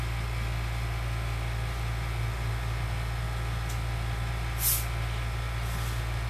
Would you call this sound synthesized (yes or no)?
no